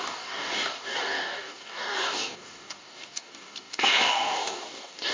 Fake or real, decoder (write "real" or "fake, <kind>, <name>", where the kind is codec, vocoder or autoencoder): fake, codec, DAC